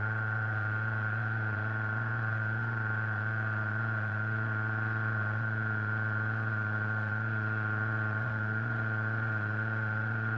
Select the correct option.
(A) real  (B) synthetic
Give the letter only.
B